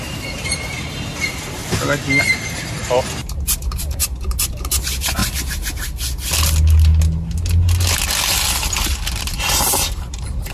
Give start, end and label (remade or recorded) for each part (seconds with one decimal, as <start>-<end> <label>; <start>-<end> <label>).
0.0-1.6 remade; 1.6-2.2 recorded; 2.2-2.8 remade; 2.8-3.8 recorded; 3.8-5.2 remade; 5.2-9.2 recorded; 9.2-10.5 remade